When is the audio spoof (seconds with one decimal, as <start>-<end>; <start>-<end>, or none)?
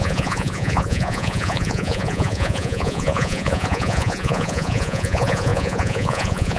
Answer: 0.0-6.6